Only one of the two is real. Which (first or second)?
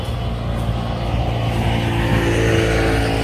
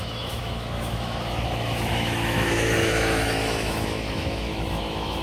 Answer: first